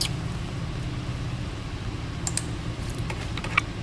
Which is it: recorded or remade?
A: recorded